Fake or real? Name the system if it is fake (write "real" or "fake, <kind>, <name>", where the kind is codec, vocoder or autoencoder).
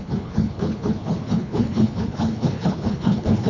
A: fake, codec, HILCodec